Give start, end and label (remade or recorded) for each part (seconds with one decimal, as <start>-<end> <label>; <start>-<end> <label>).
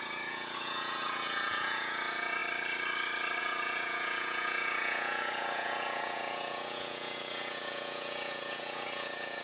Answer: 0.0-2.4 remade; 2.4-3.4 recorded; 3.4-9.4 remade